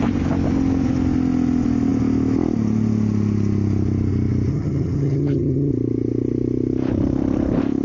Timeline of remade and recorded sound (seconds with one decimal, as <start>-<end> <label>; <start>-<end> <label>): 0.0-4.5 recorded; 4.5-5.7 remade; 5.7-7.8 recorded